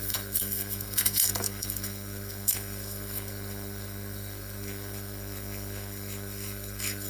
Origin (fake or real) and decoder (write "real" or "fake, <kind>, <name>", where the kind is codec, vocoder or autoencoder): fake, codec, SNAC